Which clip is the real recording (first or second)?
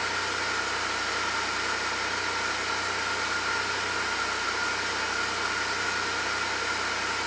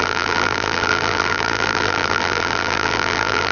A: first